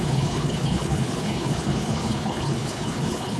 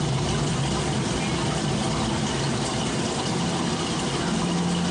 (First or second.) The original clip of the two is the second